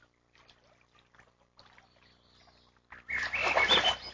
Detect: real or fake real